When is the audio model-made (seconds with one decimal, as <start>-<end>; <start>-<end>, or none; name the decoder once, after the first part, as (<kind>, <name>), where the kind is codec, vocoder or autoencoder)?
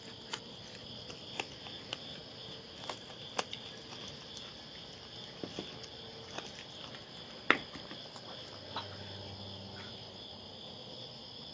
none